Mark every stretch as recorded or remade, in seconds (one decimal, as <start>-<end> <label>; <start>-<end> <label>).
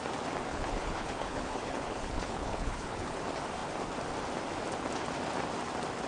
0.0-0.5 recorded; 0.5-3.2 remade; 3.2-6.1 recorded